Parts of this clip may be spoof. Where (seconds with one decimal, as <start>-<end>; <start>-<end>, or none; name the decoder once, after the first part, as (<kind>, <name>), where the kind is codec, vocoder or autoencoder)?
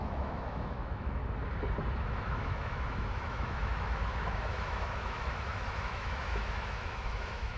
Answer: 0.0-1.2 (autoencoder, DAC-VAE); 2.0-7.6